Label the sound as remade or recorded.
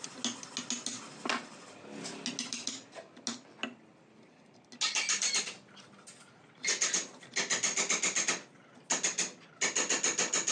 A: recorded